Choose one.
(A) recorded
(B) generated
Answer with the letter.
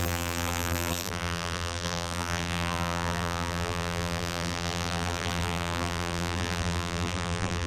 B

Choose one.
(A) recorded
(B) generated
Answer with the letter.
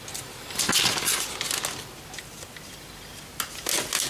A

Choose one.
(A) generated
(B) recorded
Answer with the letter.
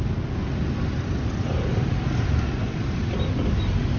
B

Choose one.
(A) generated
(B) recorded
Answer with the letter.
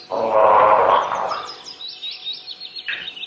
B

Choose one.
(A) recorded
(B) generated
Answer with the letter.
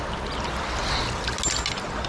A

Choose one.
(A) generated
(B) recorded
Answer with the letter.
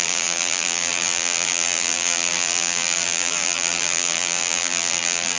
A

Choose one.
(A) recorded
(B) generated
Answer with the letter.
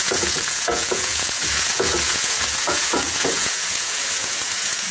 B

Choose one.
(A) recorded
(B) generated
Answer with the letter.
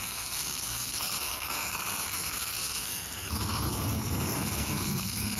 B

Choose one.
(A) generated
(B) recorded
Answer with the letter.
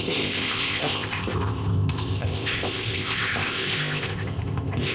A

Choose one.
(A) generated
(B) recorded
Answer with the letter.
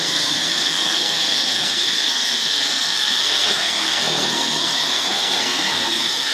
A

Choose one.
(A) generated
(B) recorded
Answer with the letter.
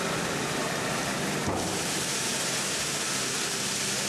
B